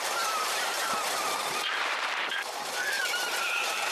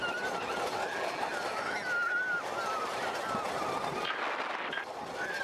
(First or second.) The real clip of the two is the second